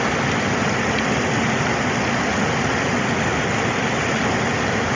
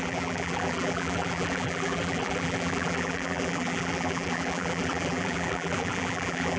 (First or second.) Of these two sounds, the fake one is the second